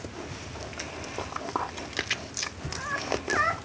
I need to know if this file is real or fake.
real